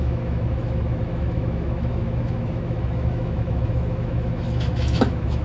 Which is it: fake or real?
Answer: fake